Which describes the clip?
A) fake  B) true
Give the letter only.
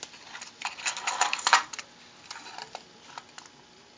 B